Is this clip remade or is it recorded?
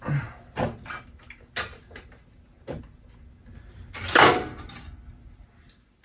recorded